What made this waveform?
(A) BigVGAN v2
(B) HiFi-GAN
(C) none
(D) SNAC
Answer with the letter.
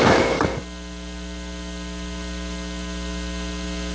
C